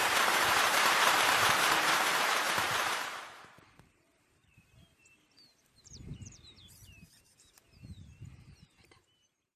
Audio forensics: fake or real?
fake